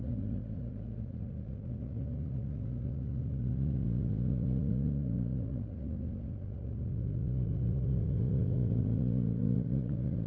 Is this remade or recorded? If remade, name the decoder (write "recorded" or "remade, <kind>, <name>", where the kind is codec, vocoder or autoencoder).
remade, vocoder, Vocos